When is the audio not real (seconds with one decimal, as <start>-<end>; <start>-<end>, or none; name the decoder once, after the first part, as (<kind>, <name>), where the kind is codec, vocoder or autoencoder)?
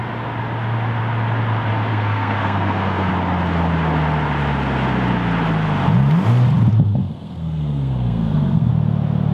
1.9-3.1 (codec, SNAC); 7.0-8.7